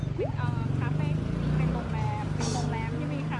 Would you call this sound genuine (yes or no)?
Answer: yes